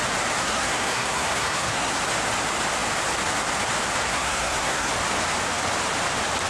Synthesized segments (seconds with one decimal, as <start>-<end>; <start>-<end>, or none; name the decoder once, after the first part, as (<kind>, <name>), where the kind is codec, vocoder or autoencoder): 0.4-2.0 (codec, SNAC); 4.0-4.9